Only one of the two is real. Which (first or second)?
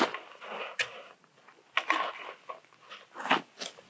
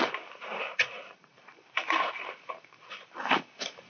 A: first